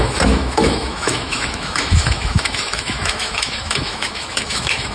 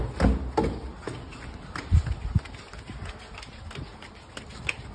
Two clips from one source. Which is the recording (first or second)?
second